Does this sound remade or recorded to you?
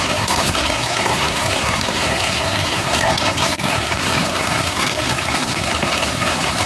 remade